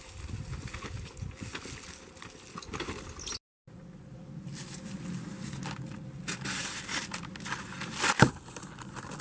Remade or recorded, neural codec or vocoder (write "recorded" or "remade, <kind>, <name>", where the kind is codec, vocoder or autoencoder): recorded